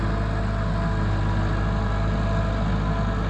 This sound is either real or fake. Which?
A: real